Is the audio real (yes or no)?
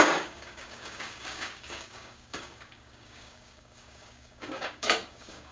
no